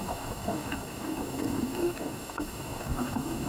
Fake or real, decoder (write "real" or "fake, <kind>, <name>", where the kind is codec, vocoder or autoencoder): fake, codec, DAC